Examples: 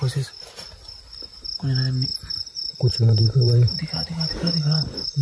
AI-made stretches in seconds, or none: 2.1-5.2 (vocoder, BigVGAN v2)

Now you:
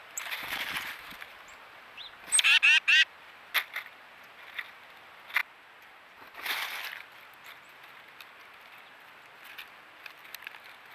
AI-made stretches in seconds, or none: 0.0-1.4 (vocoder, BigVGAN v2)

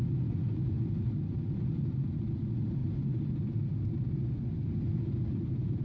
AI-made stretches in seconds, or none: 0.4-1.6 (vocoder, BigVGAN v2); 2.8-3.3